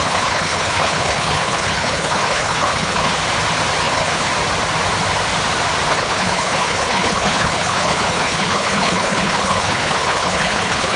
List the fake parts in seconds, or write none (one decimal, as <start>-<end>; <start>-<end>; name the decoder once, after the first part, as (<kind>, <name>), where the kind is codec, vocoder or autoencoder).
0.0-3.1 (codec, HILCodec); 3.8-4.3; 5.9-11.0